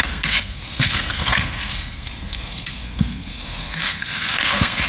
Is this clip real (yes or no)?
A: no